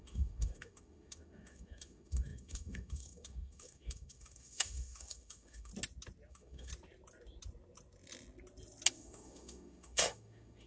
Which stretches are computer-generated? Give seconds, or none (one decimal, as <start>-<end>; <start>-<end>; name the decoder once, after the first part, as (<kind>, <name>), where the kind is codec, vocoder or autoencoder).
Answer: 0.0-5.7 (autoencoder, DAC-VAE); 6.3-6.7; 8.9-10.7

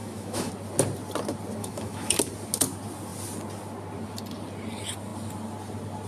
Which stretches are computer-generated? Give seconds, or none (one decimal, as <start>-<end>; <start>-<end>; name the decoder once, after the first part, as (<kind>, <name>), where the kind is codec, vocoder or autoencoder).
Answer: 0.0-0.5 (autoencoder, DAC-VAE); 1.6-2.2

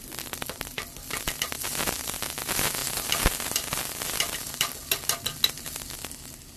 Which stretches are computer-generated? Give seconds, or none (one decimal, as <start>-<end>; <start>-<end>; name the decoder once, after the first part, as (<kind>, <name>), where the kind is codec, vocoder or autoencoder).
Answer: none

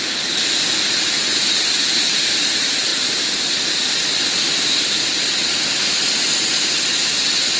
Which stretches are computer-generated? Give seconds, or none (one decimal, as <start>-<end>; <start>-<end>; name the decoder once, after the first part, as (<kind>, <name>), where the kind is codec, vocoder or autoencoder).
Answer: none